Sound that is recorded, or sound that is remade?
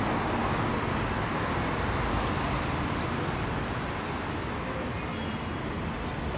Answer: recorded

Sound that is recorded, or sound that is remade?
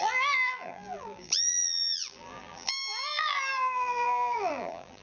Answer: remade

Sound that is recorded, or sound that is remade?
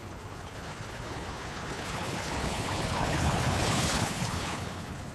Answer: remade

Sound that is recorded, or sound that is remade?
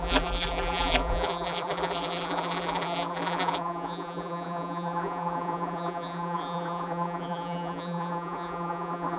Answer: remade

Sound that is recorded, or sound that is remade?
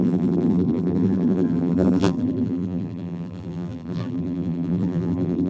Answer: remade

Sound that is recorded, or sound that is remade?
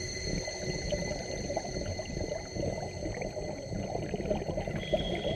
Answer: recorded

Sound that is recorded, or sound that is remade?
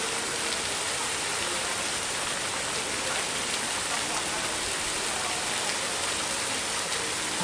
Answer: recorded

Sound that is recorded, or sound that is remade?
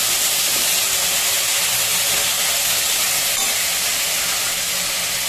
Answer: recorded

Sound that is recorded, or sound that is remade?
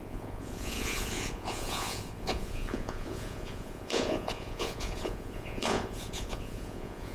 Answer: remade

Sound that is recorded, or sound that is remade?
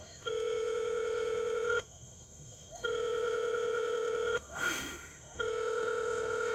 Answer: remade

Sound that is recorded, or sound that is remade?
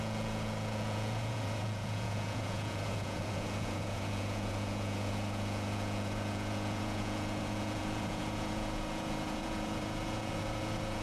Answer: remade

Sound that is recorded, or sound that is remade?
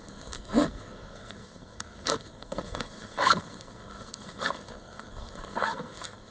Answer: remade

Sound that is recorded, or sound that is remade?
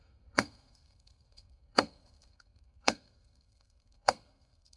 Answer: remade